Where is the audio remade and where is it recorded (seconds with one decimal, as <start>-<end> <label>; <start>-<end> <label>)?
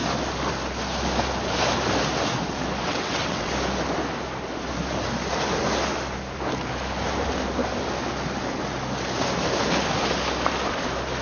0.0-2.8 recorded; 2.8-3.5 remade; 3.5-11.2 recorded